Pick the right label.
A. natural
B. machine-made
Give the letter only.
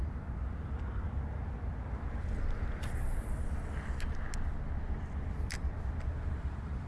A